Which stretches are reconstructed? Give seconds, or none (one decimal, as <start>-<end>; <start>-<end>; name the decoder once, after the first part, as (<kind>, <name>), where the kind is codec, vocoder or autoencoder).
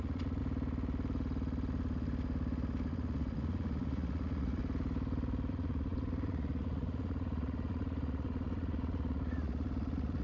0.0-0.4 (vocoder, Vocos); 2.9-4.6; 5.5-10.2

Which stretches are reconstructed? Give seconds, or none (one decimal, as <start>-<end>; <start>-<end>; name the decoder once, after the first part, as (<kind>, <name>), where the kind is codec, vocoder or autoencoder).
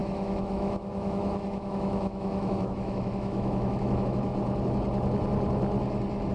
0.0-4.3 (autoencoder, DAC-VAE)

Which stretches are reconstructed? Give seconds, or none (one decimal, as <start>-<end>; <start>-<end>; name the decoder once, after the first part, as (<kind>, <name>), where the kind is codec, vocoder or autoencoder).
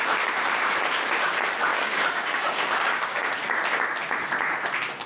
1.7-3.3 (codec, DAC)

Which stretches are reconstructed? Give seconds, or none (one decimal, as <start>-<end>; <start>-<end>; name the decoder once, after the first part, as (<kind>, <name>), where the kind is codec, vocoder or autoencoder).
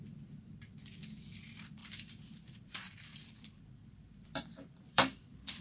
1.8-5.6 (vocoder, BigVGAN v2)